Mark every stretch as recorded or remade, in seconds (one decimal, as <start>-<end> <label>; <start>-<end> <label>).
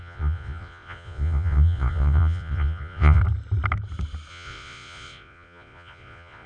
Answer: 0.0-3.2 remade; 3.2-4.3 recorded; 4.3-6.5 remade